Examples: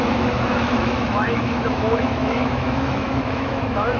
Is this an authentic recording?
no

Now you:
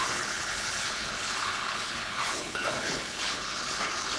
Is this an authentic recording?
no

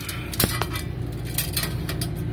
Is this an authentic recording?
yes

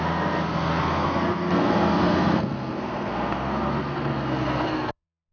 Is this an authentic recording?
no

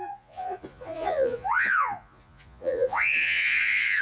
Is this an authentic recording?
no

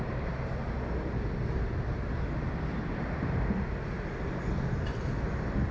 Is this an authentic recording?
yes